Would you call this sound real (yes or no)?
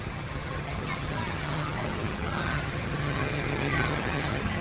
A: no